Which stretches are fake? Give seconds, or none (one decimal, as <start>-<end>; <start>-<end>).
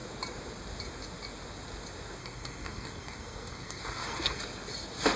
2.2-4.4